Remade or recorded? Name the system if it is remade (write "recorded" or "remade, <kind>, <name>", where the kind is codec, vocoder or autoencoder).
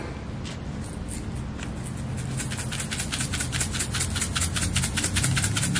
recorded